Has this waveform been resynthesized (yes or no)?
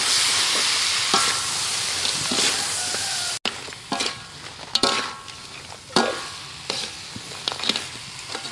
no